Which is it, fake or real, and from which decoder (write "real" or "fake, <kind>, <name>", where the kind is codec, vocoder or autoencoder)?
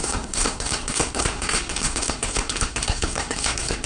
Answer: fake, codec, SNAC